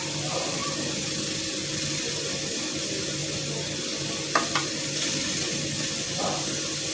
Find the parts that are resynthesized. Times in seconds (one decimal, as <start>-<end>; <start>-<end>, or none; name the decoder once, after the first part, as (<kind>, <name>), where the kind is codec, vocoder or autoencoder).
0.0-6.9 (vocoder, BigVGAN v2)